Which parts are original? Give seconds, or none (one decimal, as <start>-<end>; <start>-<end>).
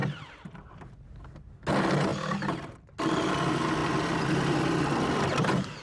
0.7-5.8